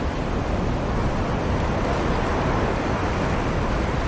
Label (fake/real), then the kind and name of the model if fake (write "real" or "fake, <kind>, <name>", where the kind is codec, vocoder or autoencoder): real